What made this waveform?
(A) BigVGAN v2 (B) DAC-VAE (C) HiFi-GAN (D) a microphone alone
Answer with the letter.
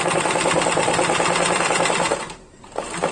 D